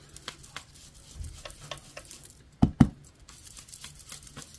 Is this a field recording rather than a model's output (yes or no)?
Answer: yes